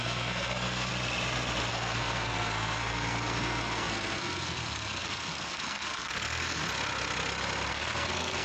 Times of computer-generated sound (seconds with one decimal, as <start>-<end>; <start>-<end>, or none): 0.0-0.9; 1.7-6.6; 7.7-8.4